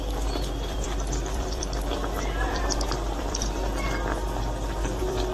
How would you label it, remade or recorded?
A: remade